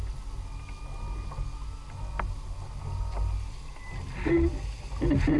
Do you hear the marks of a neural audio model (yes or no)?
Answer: no